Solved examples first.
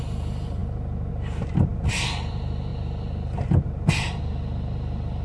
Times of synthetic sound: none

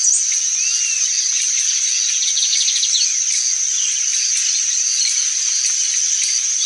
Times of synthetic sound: none

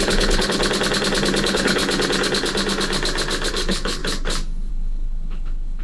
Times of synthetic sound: 0.0-0.6 (codec, HILCodec); 1.4-1.8; 3.5-4.0; 4.7-5.8

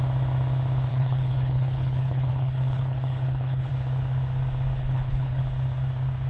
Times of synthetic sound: 0.9-3.7 (codec, HILCodec); 4.8-5.4

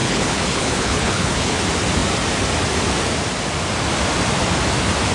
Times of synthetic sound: 0.0-1.6 (codec, HILCodec)

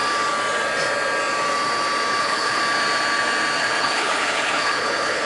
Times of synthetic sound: 2.2-2.6 (codec, HILCodec); 3.6-5.3

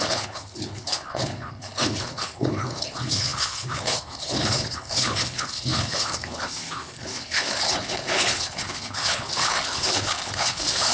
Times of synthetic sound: 0.0-10.9 (codec, HILCodec)